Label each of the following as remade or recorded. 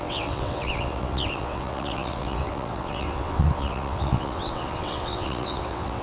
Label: remade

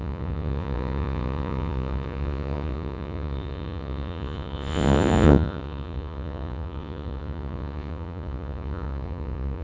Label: remade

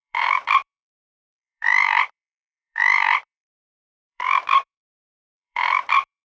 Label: remade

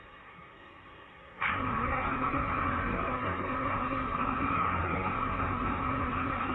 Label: remade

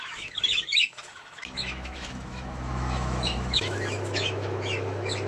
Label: remade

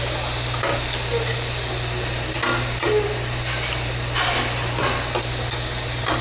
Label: recorded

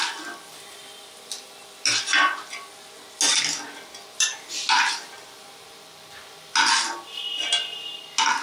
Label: recorded